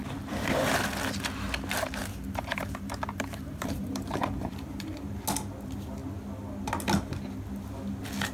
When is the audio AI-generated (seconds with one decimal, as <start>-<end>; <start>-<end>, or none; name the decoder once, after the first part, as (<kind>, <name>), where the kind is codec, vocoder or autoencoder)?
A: 2.0-5.1 (vocoder, BigVGAN v2)